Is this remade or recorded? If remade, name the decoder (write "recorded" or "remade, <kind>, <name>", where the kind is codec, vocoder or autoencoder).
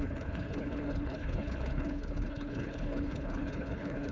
remade, codec, HILCodec